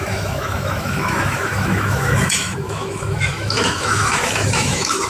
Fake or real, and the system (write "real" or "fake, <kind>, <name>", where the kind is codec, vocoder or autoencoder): fake, autoencoder, DAC-VAE